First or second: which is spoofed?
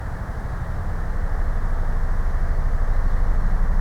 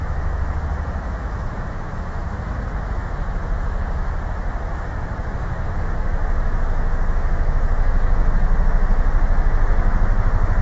second